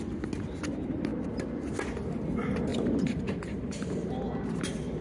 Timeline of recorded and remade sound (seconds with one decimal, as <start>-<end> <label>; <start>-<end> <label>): 0.0-2.7 recorded; 2.7-4.3 remade; 4.3-5.0 recorded